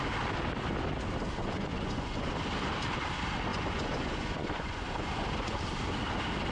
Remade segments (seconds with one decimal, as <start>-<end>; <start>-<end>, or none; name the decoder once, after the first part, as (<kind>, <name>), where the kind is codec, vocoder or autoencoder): 1.4-2.3 (vocoder, Vocos); 3.5-5.6